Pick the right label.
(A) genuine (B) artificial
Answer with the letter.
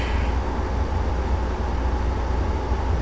A